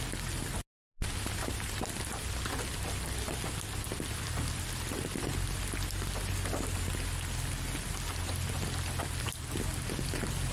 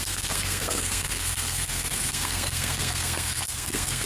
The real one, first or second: first